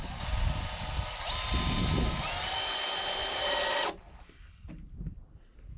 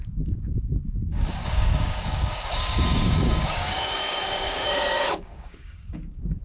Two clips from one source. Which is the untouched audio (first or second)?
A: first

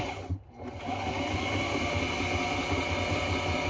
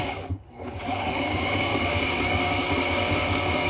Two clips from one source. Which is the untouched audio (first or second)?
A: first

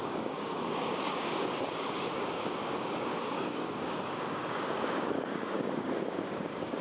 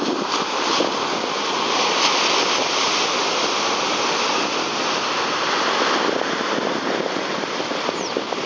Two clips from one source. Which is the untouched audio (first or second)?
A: second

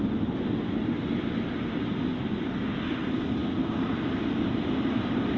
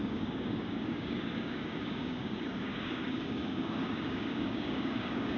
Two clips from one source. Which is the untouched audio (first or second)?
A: first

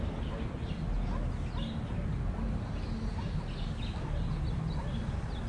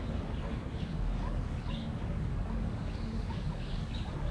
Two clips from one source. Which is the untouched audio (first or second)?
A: first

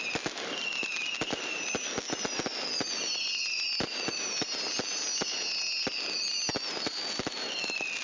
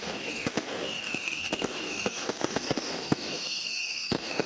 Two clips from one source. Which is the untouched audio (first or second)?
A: first